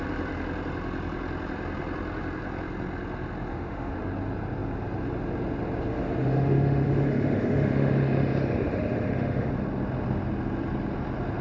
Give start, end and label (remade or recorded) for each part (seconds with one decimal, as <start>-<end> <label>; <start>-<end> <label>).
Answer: 0.0-3.5 recorded; 3.5-4.0 remade; 4.0-5.9 recorded; 5.9-9.5 remade; 9.5-11.4 recorded